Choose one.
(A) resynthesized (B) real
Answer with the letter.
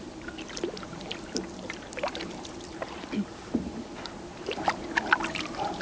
A